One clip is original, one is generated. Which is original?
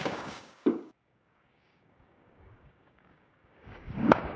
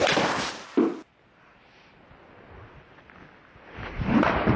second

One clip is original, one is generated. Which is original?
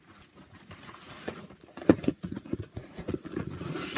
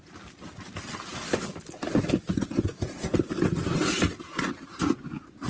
second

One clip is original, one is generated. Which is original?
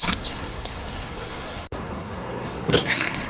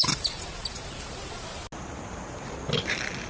second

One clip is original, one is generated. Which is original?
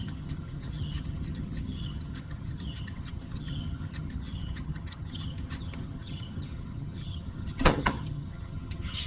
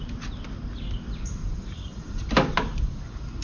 second